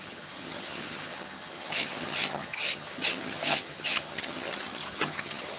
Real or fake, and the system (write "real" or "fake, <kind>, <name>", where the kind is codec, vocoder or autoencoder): fake, vocoder, HiFi-GAN